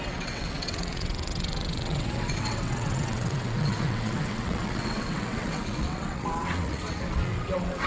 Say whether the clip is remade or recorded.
remade